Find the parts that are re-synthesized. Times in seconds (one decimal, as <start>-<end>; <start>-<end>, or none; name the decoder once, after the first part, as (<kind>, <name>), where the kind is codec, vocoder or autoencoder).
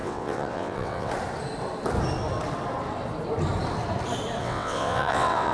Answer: 0.0-1.1 (vocoder, WaveNeXt); 4.4-5.5